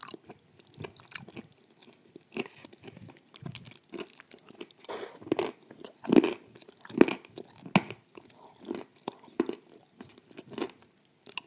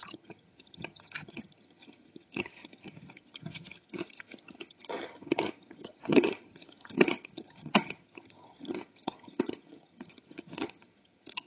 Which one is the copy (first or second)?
second